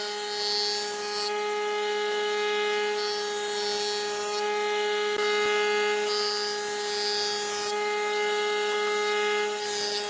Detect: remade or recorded recorded